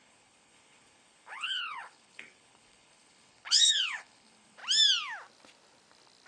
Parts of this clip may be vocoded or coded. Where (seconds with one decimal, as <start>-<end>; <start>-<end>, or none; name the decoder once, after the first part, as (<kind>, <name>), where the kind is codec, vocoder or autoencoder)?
0.0-4.6 (codec, HILCodec)